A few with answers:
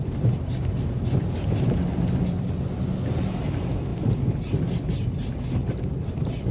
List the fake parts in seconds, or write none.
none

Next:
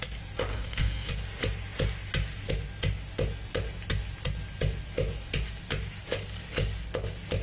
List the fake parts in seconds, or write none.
0.5-1.1

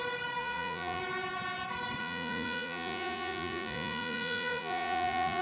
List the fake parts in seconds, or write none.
0.4-1.0; 2.0-5.4